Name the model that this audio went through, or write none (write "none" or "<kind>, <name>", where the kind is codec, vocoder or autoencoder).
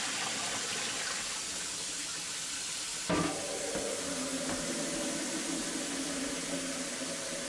none